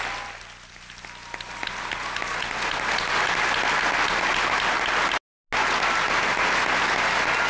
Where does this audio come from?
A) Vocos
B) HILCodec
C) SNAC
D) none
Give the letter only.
D